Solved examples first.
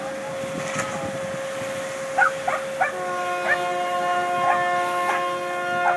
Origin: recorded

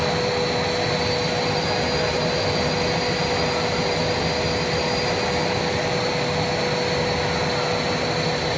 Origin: recorded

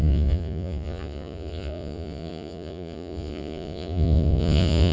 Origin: remade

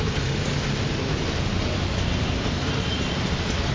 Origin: recorded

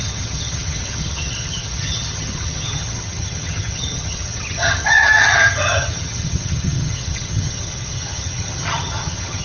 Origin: remade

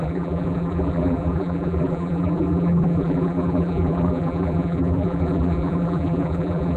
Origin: remade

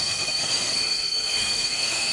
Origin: remade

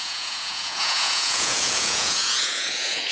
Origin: remade